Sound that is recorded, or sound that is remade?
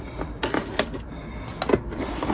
recorded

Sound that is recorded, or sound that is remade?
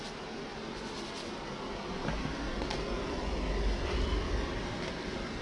recorded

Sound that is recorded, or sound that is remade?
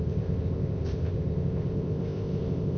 remade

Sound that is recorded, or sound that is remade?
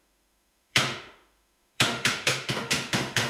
remade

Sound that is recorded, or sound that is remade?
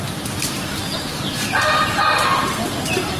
remade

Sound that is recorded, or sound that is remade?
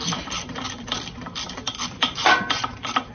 remade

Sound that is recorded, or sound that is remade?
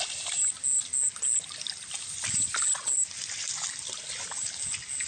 recorded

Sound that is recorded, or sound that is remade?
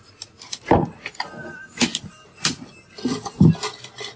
recorded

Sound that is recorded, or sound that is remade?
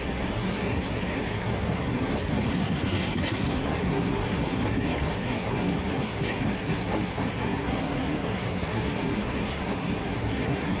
remade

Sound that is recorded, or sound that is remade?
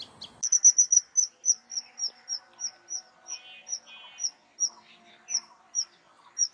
recorded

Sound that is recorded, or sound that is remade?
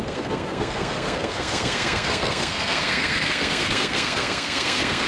remade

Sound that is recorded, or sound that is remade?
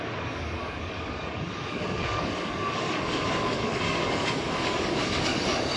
remade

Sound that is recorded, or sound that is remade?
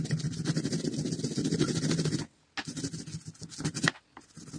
recorded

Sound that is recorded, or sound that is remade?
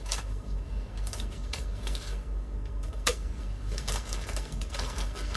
remade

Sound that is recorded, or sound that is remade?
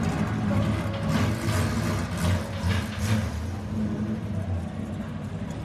recorded